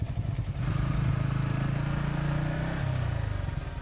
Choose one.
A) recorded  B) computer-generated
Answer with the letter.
A